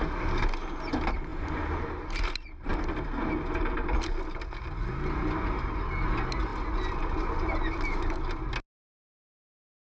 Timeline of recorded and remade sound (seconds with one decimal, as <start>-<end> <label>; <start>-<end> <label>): 0.0-1.3 recorded; 1.3-1.9 remade; 1.9-10.0 recorded